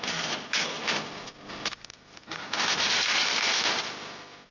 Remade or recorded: recorded